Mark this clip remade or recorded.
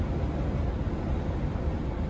recorded